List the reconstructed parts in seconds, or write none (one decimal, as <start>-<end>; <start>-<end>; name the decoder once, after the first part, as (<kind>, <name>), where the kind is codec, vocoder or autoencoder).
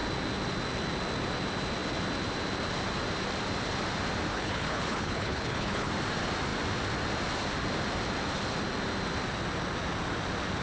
4.3-5.9 (codec, HILCodec)